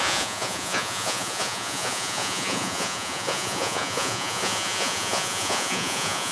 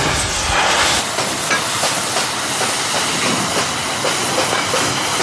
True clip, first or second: second